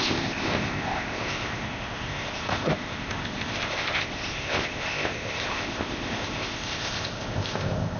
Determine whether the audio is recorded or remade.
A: remade